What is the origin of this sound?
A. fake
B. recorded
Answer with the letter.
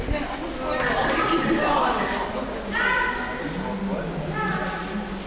B